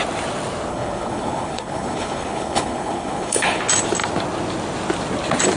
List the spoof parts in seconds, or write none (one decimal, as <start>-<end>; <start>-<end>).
0.7-3.6